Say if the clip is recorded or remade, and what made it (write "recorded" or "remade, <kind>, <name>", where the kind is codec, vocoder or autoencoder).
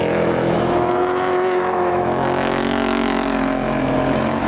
remade, autoencoder, DAC-VAE